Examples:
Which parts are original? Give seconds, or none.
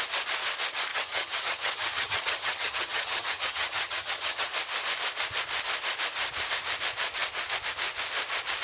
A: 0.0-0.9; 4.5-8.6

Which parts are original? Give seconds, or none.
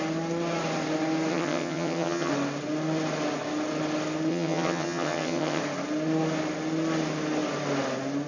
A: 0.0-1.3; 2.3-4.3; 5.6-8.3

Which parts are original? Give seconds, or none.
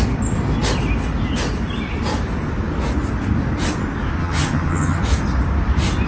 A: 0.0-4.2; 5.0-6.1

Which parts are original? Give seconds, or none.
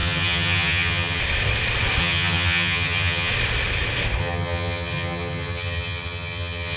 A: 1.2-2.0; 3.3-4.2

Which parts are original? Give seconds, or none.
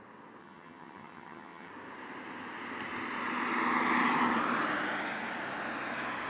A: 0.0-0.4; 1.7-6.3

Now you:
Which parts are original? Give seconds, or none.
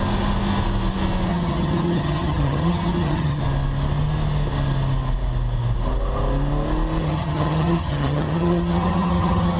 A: 0.0-1.3; 3.4-7.0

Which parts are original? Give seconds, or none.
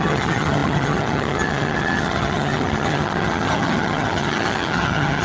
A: none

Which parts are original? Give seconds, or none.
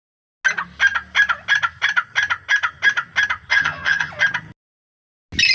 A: 0.0-3.5; 4.1-5.5